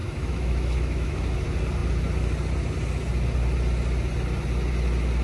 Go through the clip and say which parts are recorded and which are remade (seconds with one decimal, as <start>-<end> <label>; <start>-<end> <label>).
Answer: 0.0-1.1 remade; 1.1-5.2 recorded